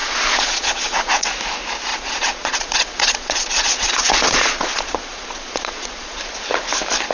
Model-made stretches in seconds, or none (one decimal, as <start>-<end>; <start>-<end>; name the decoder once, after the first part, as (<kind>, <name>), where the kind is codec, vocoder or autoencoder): 0.0-1.3 (vocoder, Vocos); 1.9-6.2